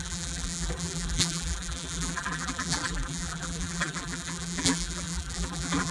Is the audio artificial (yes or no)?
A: yes